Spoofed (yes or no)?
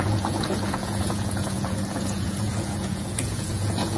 yes